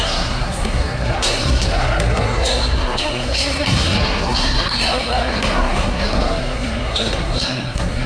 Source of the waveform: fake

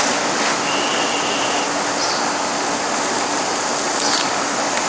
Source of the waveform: real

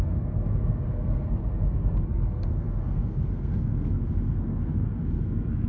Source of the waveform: fake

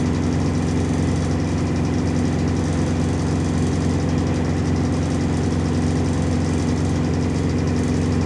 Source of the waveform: real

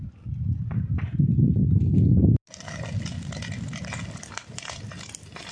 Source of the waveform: real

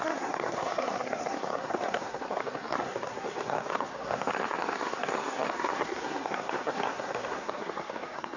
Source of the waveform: fake